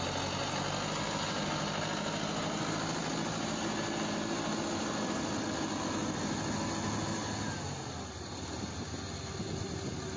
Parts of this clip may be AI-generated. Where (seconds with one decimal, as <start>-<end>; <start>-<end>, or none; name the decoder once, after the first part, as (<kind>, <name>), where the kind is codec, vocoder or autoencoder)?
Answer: none